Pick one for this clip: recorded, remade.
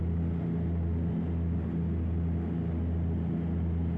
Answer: recorded